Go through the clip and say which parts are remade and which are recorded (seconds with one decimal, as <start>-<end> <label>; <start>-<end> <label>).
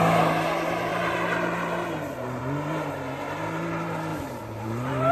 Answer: 0.0-0.9 recorded; 0.9-2.4 remade; 2.4-4.1 recorded; 4.1-5.1 remade